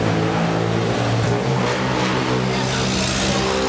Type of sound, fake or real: real